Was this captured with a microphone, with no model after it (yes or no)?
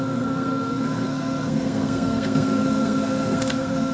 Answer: no